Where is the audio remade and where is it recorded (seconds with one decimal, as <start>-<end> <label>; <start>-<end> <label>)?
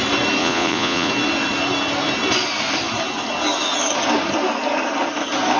0.0-0.4 recorded; 0.4-1.1 remade; 1.1-5.6 recorded